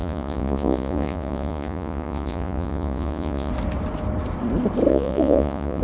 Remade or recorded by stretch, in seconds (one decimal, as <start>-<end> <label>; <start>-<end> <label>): 0.0-3.5 remade; 3.5-4.9 recorded; 4.9-5.8 remade